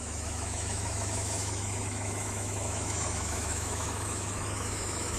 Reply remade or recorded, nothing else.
remade